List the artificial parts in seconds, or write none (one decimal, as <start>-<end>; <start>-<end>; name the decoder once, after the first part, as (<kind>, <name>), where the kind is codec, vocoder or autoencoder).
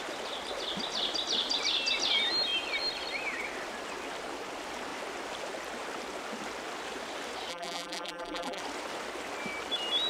7.5-8.6 (vocoder, BigVGAN v2)